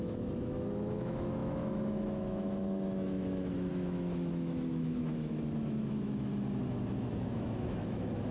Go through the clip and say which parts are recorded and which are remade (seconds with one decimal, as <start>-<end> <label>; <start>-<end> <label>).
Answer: 0.0-6.3 remade; 6.3-7.0 recorded; 7.0-8.3 remade